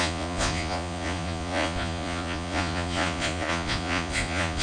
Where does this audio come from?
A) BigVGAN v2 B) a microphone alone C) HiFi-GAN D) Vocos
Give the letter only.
D